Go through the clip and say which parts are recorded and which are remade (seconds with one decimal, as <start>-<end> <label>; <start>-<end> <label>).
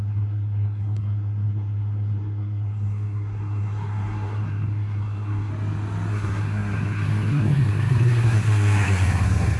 0.0-5.5 remade; 5.5-6.1 recorded; 6.1-9.6 remade